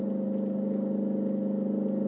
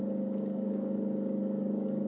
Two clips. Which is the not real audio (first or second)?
second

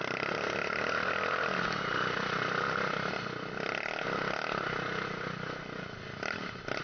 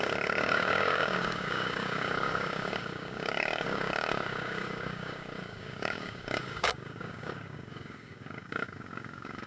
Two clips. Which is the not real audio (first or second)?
second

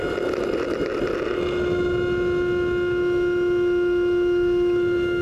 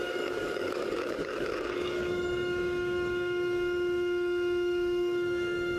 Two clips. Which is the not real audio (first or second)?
second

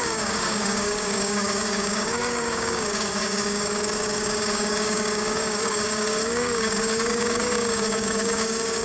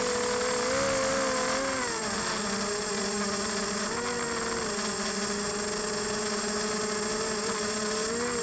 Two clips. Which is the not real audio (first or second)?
first